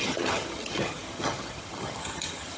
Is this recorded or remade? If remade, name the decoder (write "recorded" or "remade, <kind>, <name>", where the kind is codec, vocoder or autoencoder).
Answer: remade, vocoder, HiFi-GAN